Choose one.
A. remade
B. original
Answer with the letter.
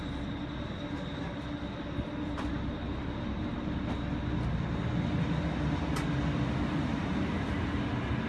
B